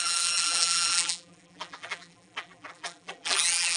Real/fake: fake